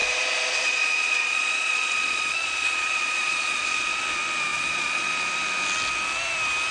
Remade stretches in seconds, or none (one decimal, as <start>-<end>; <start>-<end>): 0.0-4.0; 4.5-5.1